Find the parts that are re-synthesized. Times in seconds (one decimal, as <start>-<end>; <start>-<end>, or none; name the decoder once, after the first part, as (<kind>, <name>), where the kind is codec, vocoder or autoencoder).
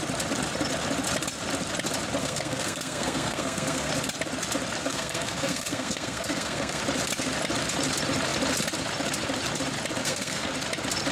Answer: 2.2-3.9 (codec, SNAC); 4.8-6.8; 10.0-10.5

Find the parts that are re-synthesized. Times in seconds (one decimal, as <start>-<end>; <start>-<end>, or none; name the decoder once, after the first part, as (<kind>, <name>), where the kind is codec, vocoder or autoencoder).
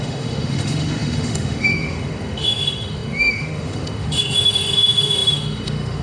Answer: 0.0-6.0 (autoencoder, DAC-VAE)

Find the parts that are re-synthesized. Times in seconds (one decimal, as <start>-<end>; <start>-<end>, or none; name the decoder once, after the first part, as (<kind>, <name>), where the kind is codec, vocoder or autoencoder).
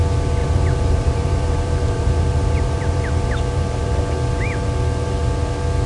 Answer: 0.4-3.9 (vocoder, BigVGAN v2)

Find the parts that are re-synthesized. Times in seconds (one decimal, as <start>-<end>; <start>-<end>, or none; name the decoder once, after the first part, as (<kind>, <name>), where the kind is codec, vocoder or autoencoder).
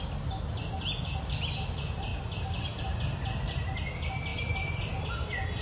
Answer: none